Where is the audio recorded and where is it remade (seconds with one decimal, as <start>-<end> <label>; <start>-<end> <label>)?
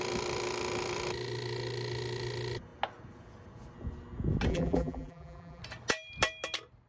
0.0-4.5 recorded; 4.5-5.6 remade; 5.6-6.9 recorded